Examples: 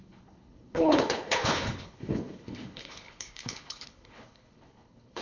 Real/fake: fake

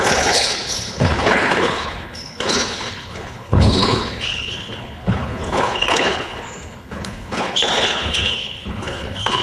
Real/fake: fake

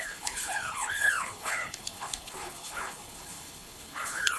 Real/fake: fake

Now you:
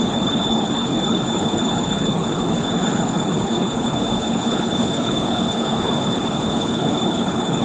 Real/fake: fake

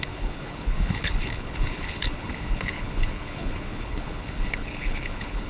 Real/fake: fake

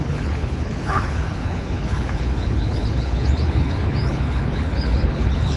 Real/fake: fake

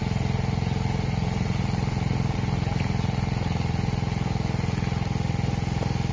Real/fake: real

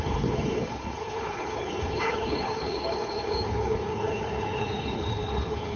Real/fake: fake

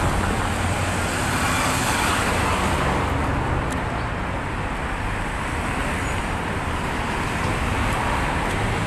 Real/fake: real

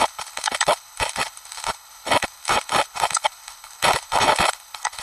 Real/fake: fake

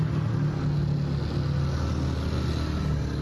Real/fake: real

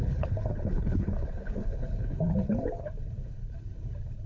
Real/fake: fake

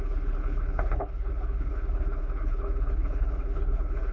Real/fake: fake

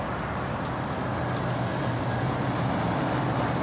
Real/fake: real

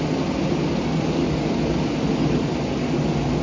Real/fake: real